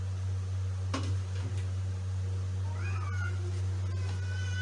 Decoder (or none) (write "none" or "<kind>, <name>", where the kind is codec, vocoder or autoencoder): none